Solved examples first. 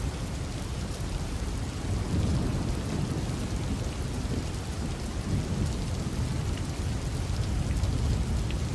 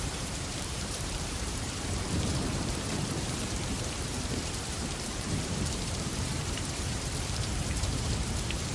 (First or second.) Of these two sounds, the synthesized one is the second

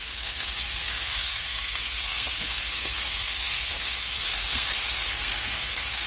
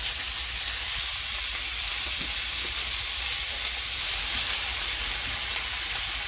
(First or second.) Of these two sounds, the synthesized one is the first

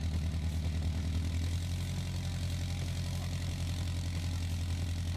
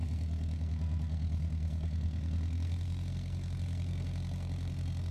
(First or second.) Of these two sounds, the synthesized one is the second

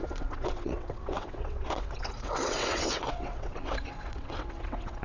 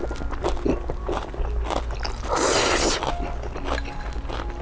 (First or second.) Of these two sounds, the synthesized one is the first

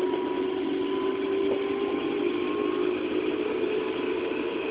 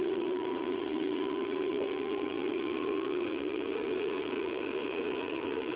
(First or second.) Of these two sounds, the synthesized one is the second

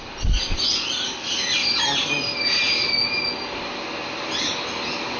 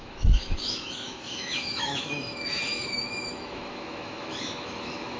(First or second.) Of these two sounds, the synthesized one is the second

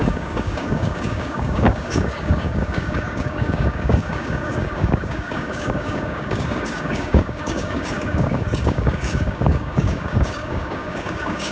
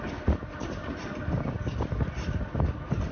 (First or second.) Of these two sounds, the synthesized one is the first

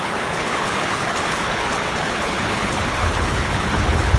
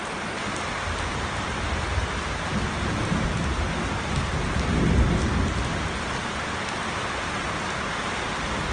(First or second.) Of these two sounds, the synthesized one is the first